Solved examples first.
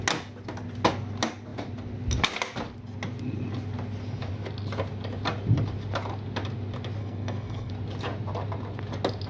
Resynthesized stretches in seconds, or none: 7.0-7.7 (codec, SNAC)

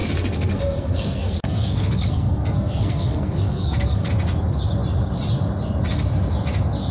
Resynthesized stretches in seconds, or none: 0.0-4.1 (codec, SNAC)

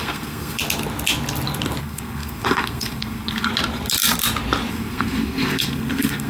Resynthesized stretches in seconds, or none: 0.0-0.6 (codec, SNAC); 1.8-3.5; 4.7-6.3

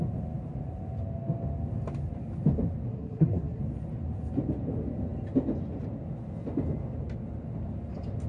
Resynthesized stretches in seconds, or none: 2.9-3.6 (codec, SNAC)

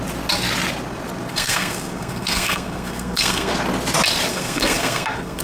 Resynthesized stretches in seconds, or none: 1.3-3.5 (codec, SNAC); 4.3-5.4

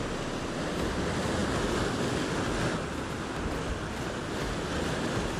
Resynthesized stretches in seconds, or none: none

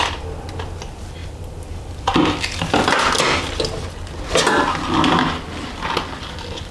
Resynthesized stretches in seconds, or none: none

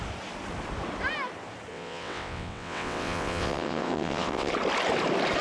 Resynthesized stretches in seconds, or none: 1.7-4.5 (vocoder, WaveNeXt)